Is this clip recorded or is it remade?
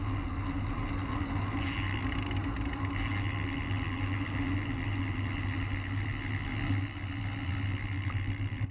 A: recorded